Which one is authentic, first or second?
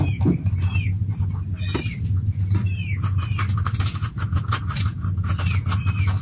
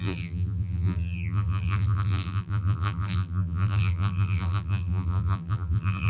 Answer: first